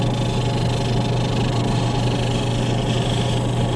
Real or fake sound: real